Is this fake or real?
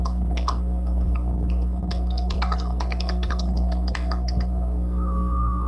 fake